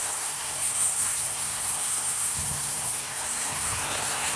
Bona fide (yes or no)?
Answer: no